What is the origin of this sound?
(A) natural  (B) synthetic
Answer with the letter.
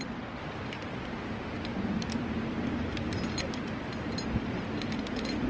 A